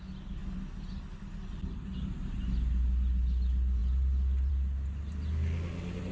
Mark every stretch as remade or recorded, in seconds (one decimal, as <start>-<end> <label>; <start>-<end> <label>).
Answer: 0.0-6.1 recorded